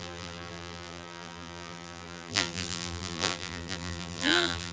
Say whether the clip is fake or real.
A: fake